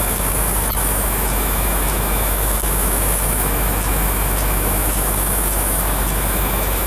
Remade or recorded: remade